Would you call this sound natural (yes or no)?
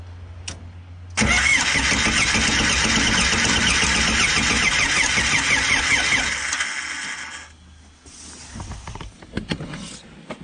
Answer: yes